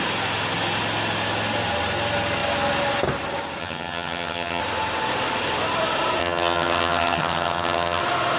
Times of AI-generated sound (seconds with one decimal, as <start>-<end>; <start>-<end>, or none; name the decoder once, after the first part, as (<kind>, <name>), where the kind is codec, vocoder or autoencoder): 3.6-4.6 (vocoder, HiFi-GAN); 6.2-8.0